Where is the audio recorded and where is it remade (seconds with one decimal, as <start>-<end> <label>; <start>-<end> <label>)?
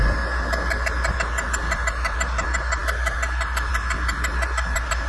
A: 0.0-5.1 recorded